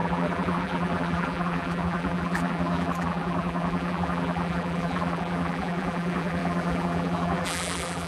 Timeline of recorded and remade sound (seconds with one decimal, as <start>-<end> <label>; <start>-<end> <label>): 0.0-8.1 remade